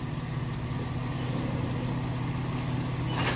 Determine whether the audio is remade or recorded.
recorded